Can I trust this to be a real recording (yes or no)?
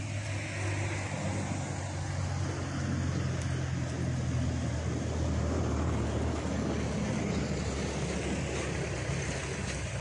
yes